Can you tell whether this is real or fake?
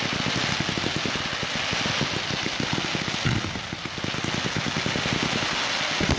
real